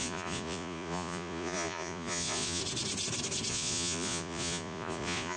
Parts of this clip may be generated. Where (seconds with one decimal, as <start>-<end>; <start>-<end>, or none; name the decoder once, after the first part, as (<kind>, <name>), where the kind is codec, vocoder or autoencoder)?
0.0-2.6 (vocoder, Vocos); 3.5-5.4